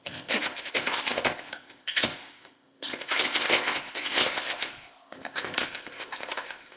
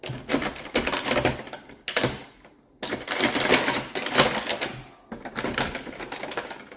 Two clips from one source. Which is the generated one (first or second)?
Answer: first